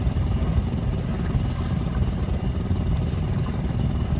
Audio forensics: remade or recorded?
remade